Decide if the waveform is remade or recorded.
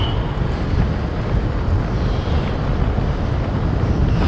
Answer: recorded